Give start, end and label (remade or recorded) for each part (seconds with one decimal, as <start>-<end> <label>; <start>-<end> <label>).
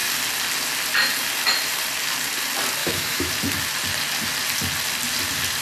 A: 0.0-2.8 recorded; 2.8-3.3 remade; 3.3-5.6 recorded